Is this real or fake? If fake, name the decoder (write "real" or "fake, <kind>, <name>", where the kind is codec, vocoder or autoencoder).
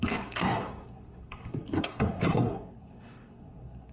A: fake, codec, SNAC